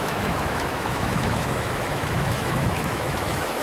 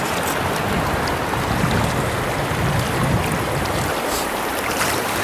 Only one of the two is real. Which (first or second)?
second